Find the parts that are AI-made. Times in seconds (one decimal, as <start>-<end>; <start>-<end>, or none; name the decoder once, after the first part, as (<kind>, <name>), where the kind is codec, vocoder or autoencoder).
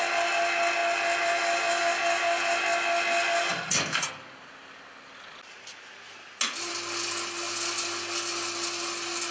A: none